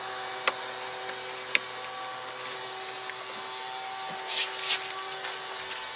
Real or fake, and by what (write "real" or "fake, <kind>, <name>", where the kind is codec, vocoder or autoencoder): real